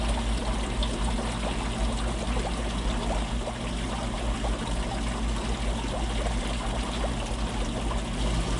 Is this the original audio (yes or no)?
yes